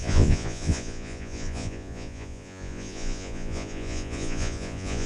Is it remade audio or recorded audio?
remade